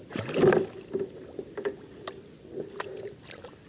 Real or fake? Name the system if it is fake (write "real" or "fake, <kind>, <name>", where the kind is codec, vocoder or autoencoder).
real